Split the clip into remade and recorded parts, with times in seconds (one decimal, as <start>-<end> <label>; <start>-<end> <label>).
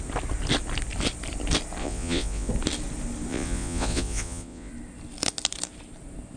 0.0-1.8 recorded; 1.8-2.5 remade; 2.5-3.3 recorded; 3.3-4.7 remade; 4.7-6.4 recorded